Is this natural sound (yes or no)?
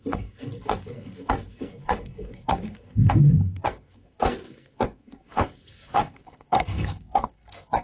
no